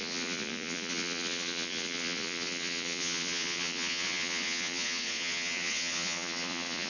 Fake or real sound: fake